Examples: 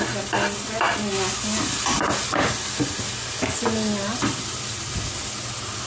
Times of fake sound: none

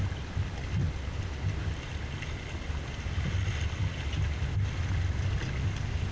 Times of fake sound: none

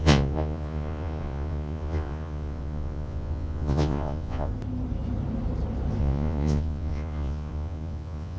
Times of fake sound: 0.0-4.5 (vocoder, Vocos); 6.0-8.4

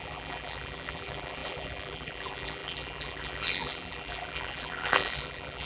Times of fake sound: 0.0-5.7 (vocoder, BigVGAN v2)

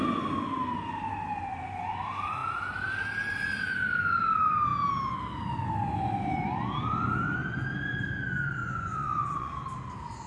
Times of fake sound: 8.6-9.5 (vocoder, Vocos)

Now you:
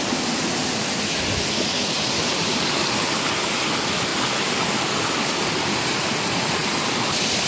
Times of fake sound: none